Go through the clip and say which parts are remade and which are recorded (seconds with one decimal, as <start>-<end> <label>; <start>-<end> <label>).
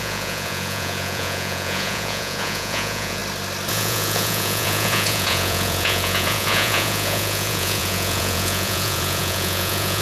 0.0-3.2 remade; 3.2-3.7 recorded; 3.7-10.0 remade